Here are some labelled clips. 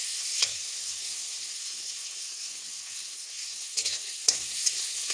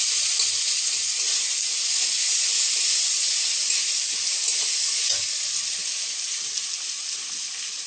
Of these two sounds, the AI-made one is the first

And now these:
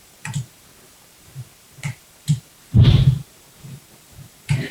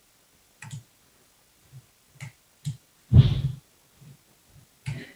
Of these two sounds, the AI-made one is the first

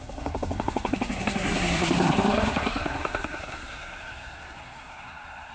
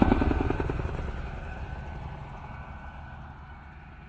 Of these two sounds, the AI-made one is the first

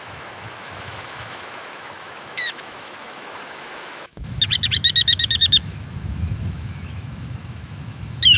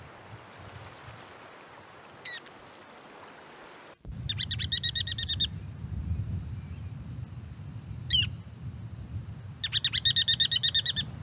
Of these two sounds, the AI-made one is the first